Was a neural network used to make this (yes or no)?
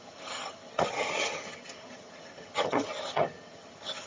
yes